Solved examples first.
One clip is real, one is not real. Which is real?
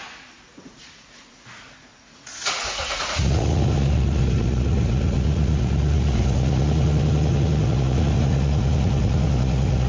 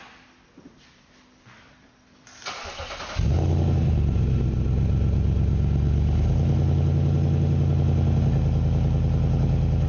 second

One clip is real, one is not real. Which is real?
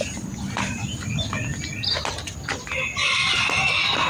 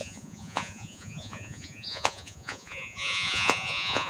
first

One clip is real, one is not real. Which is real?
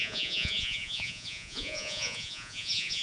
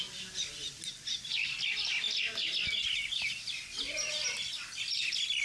second